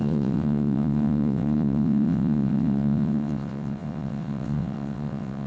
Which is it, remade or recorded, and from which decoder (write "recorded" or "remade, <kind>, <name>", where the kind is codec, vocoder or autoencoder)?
remade, vocoder, WaveNeXt